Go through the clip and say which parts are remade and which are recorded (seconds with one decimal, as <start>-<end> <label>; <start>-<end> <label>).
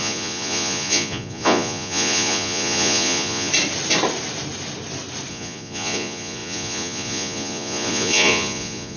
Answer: 0.0-3.5 remade; 3.5-5.3 recorded; 5.3-9.0 remade